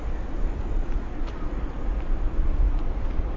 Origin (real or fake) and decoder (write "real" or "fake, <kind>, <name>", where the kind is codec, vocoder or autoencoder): real